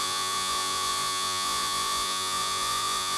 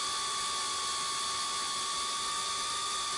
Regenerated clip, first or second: first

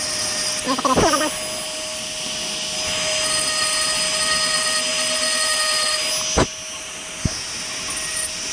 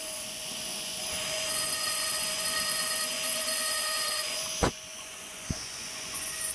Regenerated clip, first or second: second